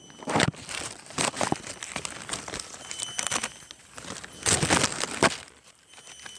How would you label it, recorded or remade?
recorded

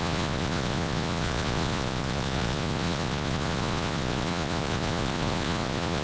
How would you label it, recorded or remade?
remade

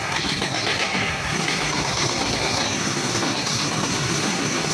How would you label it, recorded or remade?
remade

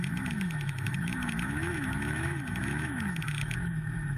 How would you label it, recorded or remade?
remade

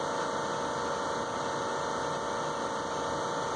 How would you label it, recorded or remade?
recorded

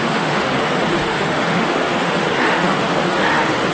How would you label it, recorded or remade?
remade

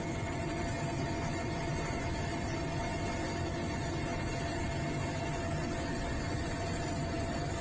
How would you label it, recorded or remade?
remade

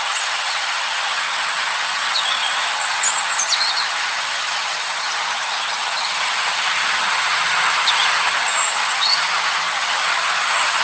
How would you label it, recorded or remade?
remade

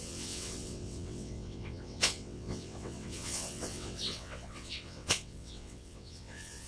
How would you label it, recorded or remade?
remade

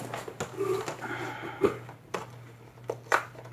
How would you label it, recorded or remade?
recorded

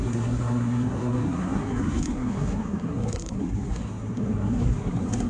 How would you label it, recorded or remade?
remade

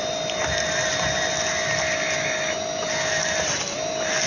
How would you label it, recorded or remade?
recorded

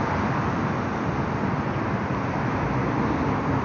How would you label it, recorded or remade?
recorded